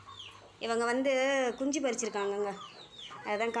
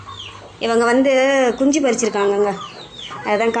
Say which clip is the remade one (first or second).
second